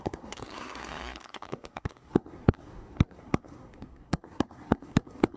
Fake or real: fake